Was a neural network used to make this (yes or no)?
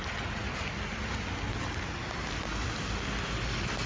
no